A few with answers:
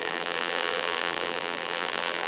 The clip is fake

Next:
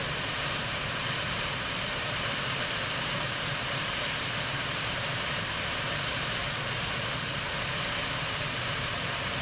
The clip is fake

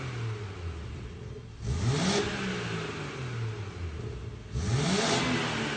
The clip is real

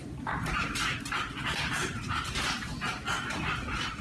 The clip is fake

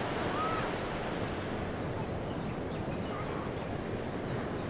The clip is real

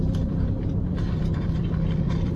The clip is fake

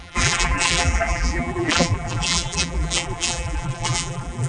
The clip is fake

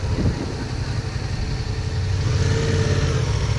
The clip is real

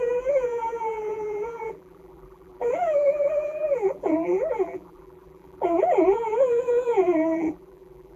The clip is fake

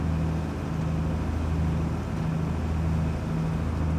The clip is real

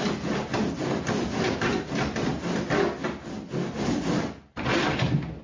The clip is real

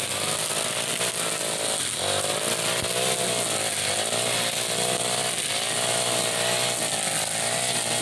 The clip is real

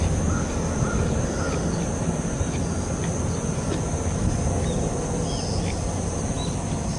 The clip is real